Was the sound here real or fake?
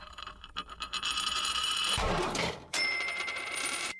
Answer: fake